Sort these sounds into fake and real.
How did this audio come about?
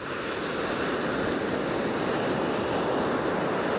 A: real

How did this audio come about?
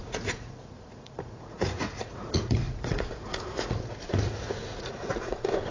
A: fake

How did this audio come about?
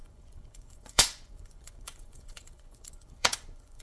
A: fake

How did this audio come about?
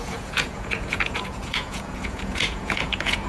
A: fake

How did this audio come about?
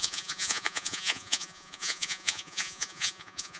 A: fake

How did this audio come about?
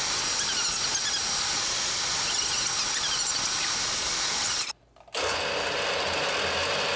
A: real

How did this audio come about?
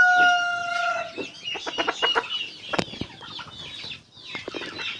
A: real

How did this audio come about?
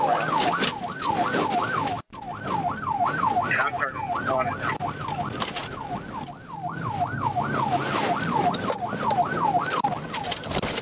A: real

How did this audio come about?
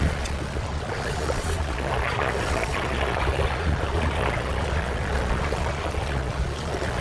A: fake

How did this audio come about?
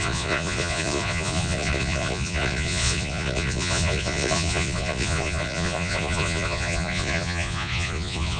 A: fake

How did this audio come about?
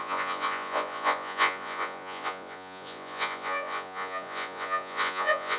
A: fake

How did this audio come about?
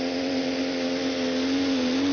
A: real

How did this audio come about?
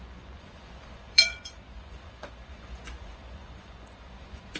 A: fake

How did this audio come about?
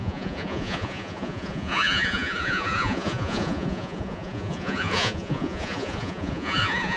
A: fake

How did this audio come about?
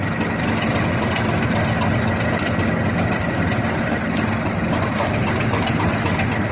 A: real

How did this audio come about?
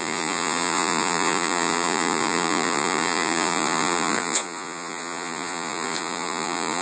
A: fake